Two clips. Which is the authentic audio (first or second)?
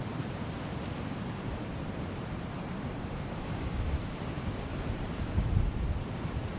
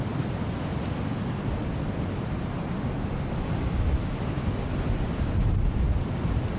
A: second